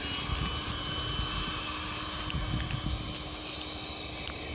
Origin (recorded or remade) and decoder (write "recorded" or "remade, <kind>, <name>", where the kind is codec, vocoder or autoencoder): recorded